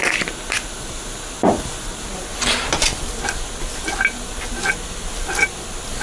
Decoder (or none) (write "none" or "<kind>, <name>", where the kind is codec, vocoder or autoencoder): none